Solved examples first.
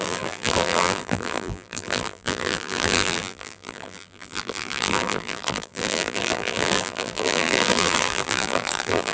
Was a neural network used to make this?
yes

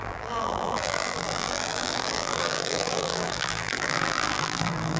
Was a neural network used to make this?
yes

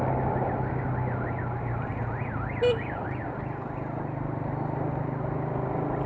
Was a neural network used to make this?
no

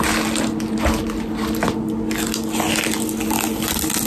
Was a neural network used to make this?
no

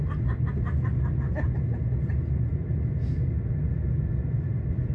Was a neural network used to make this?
no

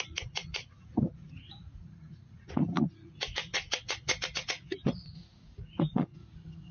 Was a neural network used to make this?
yes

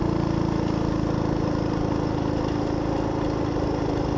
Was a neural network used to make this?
no